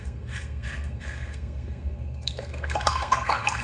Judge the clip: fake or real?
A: fake